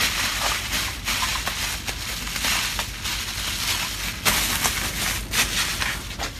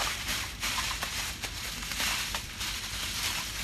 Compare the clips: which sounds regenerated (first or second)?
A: second